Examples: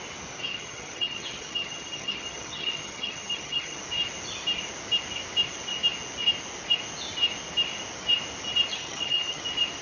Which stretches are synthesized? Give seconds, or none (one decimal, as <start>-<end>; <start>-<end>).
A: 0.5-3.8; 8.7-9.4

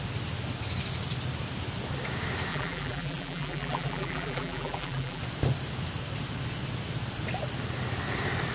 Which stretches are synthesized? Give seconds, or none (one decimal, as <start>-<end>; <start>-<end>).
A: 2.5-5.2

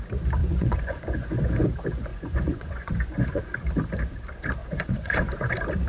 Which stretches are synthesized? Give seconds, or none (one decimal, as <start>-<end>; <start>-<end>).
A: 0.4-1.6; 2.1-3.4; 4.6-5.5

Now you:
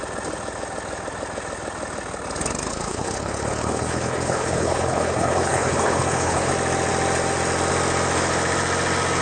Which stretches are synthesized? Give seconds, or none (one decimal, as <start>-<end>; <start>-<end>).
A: 2.7-6.5